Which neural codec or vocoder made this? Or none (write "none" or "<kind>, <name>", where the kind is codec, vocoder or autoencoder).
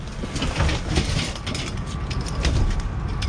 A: none